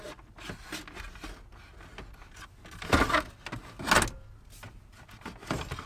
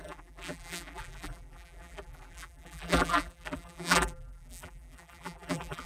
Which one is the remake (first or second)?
second